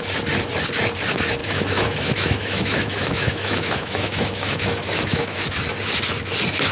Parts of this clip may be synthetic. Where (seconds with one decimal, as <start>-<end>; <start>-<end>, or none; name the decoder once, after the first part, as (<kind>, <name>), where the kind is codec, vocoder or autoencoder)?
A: 1.4-5.4 (autoencoder, DAC-VAE)